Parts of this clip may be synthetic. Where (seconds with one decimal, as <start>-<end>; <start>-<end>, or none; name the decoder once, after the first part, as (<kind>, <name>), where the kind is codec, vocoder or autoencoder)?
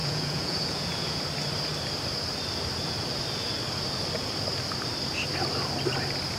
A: 0.0-1.2 (vocoder, Vocos)